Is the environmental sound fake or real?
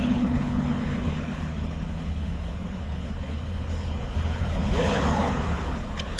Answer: fake